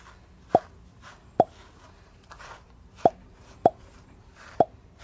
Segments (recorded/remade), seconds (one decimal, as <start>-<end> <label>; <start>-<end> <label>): 0.0-1.6 recorded; 1.6-4.6 remade; 4.6-5.0 recorded